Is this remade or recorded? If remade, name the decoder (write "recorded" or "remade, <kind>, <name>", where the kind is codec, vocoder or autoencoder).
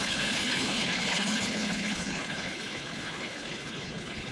remade, codec, HILCodec